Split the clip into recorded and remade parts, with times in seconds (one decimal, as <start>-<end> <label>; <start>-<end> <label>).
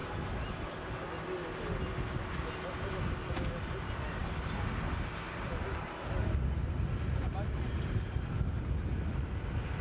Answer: 0.0-9.8 recorded